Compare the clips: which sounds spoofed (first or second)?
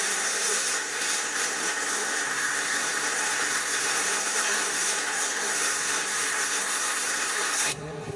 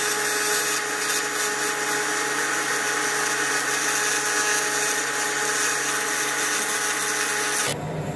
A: first